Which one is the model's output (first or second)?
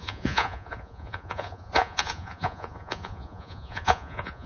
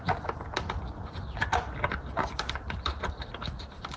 first